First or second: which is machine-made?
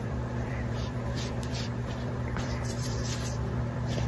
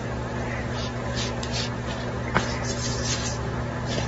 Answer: first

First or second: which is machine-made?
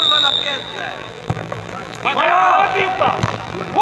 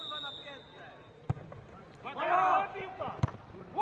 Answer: first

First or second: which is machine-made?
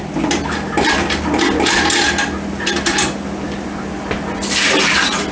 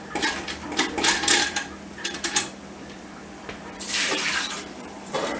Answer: second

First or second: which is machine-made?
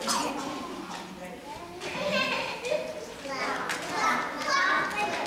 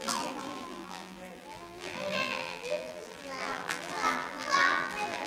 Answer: second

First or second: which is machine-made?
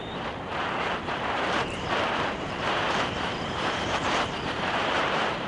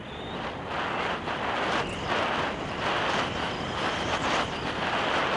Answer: first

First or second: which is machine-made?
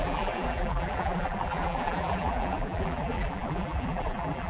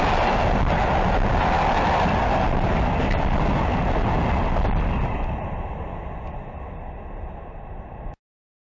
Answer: first